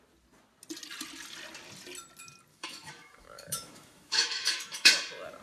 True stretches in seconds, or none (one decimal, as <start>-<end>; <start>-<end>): 0.0-2.5; 4.9-5.4